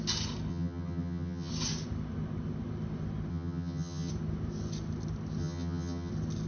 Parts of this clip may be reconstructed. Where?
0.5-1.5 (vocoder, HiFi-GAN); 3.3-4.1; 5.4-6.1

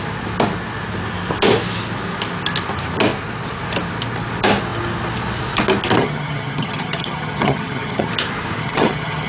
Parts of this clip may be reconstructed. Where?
6.0-8.1 (vocoder, HiFi-GAN); 8.6-9.3

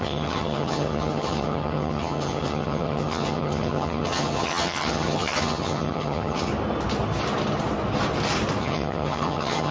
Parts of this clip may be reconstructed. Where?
0.0-6.5 (vocoder, HiFi-GAN); 8.6-9.7

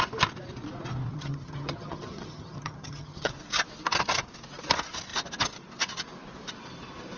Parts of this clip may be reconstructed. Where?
1.1-3.3 (vocoder, HiFi-GAN)

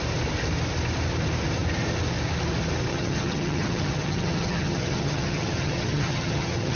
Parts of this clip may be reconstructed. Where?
2.9-6.8 (vocoder, HiFi-GAN)

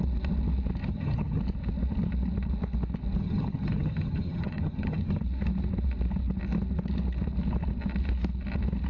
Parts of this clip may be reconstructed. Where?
0.8-1.4 (vocoder, HiFi-GAN); 3.2-5.2

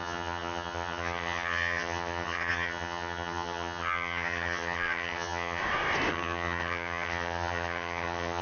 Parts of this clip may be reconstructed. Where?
0.0-5.6 (vocoder, HiFi-GAN); 6.1-8.4